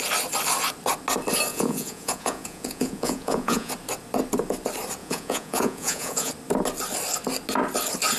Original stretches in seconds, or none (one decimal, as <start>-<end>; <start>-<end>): 0.0-1.5; 3.7-5.0; 6.3-8.2